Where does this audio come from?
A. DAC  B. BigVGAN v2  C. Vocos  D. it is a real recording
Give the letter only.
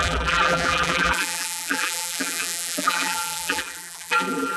B